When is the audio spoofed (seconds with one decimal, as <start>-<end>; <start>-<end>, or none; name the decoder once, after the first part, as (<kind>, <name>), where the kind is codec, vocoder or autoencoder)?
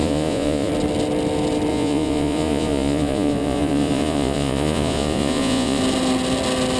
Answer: 0.0-0.7 (vocoder, Vocos); 1.7-5.8